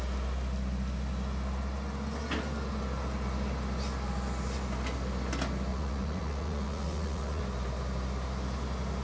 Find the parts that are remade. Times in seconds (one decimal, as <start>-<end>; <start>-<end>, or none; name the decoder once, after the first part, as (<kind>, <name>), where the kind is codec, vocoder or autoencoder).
5.7-7.4 (vocoder, Vocos)